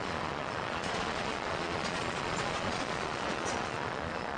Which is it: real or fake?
fake